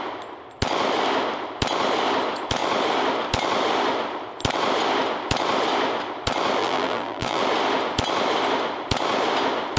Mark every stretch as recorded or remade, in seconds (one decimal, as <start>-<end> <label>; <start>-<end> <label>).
0.0-6.6 recorded; 6.6-7.4 remade; 7.4-9.8 recorded